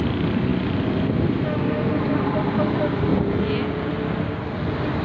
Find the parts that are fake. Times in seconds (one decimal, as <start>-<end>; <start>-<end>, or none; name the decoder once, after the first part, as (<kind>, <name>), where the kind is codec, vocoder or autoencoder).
3.1-3.9 (vocoder, Vocos)